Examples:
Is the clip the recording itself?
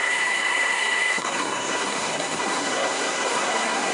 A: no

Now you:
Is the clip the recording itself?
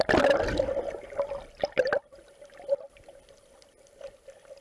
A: yes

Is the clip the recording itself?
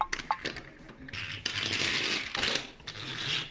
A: yes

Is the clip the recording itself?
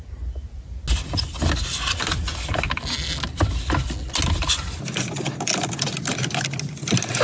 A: yes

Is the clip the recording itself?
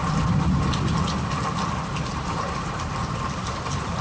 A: yes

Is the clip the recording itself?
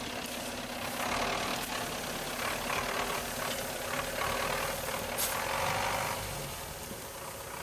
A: yes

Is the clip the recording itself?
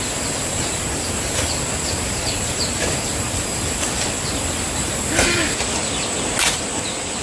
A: yes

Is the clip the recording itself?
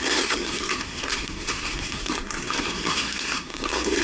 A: no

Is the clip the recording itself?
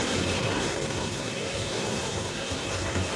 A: no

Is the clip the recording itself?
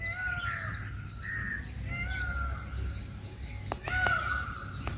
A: yes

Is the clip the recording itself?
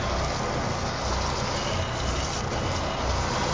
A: yes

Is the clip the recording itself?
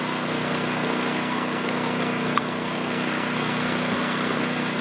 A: no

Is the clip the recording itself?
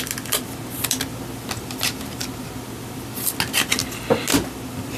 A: yes